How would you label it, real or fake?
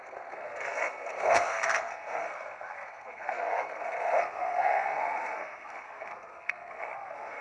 fake